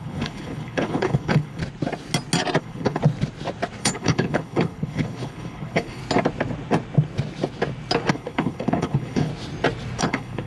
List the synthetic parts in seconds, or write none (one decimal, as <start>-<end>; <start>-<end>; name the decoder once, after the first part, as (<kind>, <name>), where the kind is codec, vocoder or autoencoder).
0.0-1.6 (codec, HILCodec); 2.6-3.0; 3.8-6.0; 8.1-9.3; 10.0-10.5